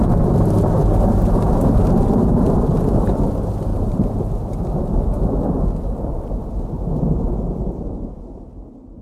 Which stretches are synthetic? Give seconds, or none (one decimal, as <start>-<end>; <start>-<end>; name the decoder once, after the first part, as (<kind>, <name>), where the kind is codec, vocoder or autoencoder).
3.7-4.3 (vocoder, BigVGAN v2)